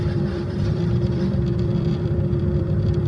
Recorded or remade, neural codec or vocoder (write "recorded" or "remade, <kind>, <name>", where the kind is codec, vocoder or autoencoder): remade, vocoder, BigVGAN v2